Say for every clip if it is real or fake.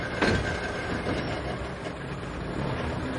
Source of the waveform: real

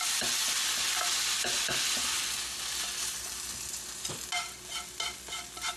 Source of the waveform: real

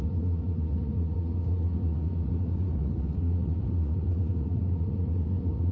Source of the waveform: fake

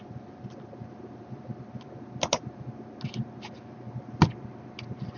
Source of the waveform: real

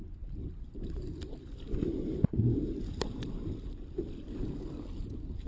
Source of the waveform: real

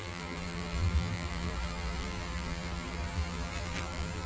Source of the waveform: fake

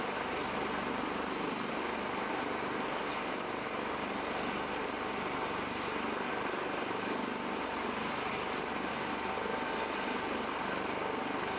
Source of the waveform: real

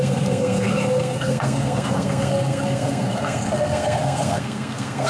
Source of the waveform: fake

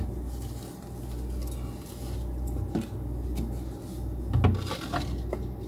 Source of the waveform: real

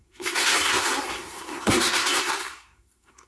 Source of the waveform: fake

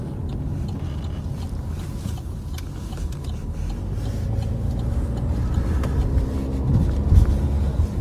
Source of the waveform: real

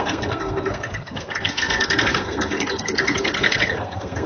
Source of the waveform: fake